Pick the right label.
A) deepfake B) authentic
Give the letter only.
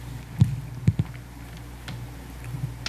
B